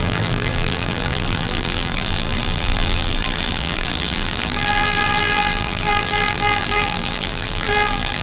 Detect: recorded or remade remade